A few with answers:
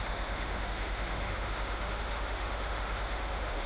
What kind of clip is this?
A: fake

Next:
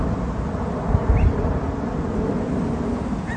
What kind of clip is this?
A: real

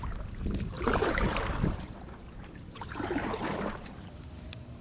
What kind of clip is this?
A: fake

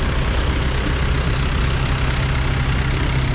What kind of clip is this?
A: real